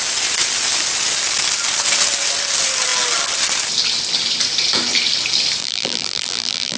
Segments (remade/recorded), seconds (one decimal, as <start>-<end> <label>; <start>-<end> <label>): 0.0-5.6 recorded; 5.6-6.8 remade